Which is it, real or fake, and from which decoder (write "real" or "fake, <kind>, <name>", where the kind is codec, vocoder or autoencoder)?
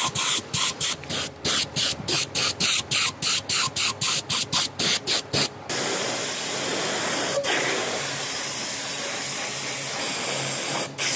real